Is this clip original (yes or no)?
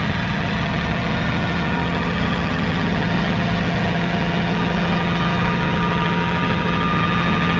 no